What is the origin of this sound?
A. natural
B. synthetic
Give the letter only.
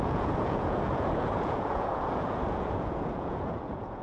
B